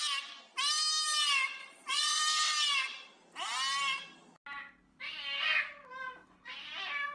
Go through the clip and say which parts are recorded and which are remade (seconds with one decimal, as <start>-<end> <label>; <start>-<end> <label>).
0.0-1.6 recorded; 1.6-2.2 remade; 2.2-7.1 recorded